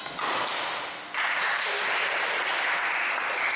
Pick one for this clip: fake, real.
real